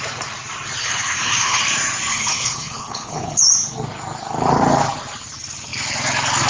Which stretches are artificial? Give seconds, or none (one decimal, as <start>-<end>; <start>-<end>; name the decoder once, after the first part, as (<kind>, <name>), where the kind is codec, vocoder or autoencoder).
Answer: 0.8-1.6 (codec, HILCodec); 2.1-3.4